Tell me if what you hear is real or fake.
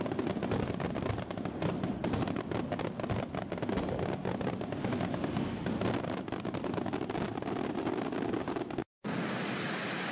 real